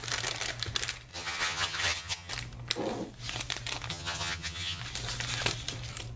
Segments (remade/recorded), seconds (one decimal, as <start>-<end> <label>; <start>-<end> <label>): 0.0-1.1 recorded; 1.1-2.3 remade; 2.3-3.9 recorded; 3.9-4.8 remade; 4.8-6.2 recorded